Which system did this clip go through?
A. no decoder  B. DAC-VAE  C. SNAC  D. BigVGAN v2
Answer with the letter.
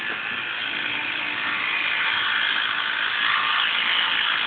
A